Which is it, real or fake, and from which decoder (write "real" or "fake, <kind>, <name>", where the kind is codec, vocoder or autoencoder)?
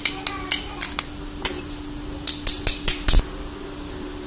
real